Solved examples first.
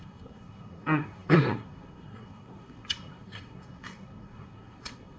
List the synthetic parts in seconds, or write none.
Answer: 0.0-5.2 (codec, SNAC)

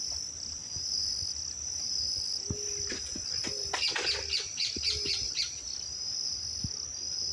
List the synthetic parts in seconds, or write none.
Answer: none

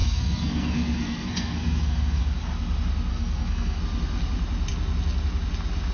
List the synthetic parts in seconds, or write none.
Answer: 0.0-2.2 (codec, SNAC); 3.1-3.8

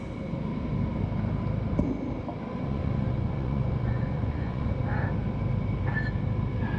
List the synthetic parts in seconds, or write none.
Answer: 2.5-4.7 (vocoder, Vocos)

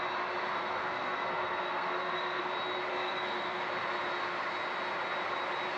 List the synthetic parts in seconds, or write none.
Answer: 0.5-2.4 (codec, SNAC); 2.9-3.6

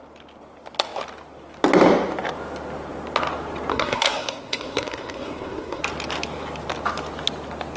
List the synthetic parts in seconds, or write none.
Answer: 3.7-5.8 (codec, SNAC)

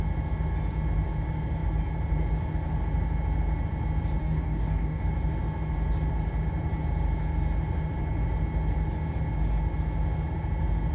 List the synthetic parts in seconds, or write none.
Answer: 4.2-5.0 (codec, DAC)

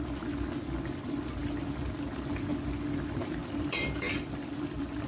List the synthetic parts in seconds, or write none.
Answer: 3.4-5.1 (vocoder, BigVGAN v2)